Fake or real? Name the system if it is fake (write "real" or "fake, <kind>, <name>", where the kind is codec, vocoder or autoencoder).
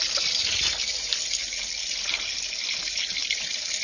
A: real